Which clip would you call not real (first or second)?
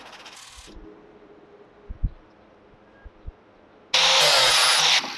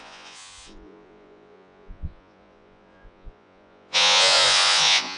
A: second